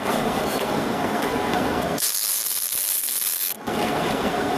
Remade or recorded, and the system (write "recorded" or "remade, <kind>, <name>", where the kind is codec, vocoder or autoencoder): remade, codec, SNAC